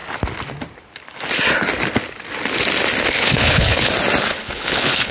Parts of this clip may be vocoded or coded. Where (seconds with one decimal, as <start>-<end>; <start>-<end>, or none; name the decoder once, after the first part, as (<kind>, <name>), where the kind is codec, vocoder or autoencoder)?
3.0-3.9 (codec, HILCodec); 4.3-5.1